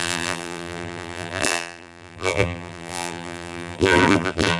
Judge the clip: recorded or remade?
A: remade